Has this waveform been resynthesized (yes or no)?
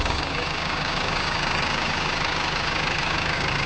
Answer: yes